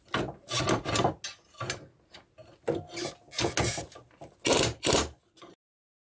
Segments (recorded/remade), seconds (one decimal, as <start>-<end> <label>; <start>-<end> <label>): 0.0-6.0 recorded

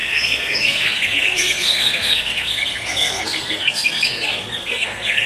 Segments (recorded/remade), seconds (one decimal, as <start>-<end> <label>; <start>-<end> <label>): 0.0-5.3 remade

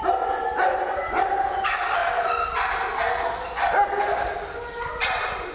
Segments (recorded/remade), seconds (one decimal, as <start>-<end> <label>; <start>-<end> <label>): 0.0-5.5 recorded